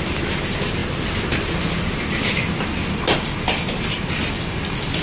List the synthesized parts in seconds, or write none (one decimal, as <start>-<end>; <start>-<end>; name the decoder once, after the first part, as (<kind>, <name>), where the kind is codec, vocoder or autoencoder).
none